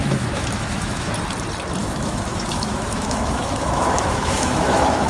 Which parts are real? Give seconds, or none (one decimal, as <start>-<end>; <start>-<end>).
1.1-1.8

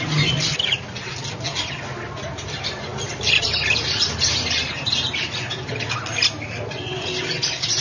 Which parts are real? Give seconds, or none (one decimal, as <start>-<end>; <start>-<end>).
0.0-7.8